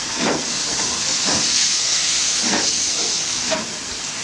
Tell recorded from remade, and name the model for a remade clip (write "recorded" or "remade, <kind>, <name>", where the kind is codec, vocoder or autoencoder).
remade, codec, SNAC